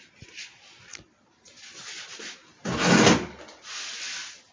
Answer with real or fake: real